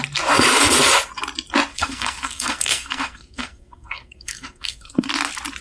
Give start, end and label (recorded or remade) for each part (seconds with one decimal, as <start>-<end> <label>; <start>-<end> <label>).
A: 0.0-1.7 recorded; 1.7-5.1 remade; 5.1-5.6 recorded